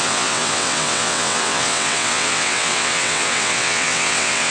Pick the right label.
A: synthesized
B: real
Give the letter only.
A